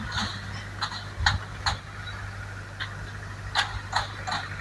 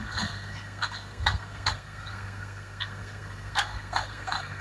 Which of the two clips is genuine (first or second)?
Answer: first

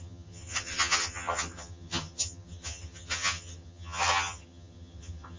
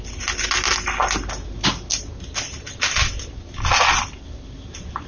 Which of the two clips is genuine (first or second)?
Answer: second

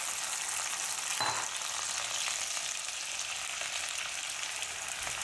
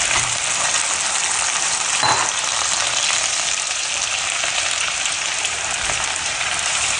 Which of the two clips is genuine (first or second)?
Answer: first